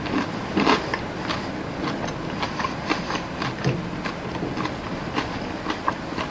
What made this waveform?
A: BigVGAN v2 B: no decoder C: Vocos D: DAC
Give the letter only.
B